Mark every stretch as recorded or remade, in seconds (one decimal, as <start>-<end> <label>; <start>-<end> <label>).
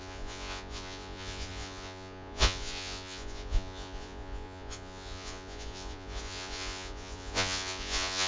0.0-8.3 remade